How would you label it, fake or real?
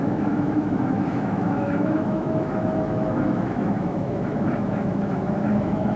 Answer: fake